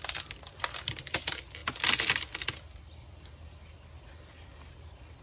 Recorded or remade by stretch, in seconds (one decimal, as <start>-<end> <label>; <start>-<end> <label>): 0.0-5.2 recorded